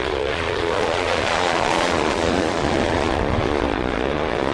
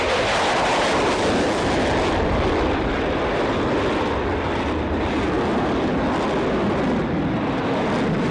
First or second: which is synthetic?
first